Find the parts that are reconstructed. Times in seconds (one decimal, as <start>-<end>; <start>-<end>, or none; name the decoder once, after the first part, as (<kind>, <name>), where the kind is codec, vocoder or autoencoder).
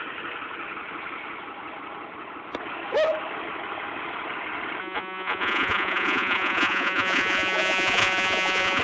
4.8-8.8 (vocoder, Vocos)